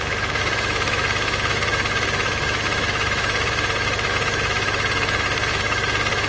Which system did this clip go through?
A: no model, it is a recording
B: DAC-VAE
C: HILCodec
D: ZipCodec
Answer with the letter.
B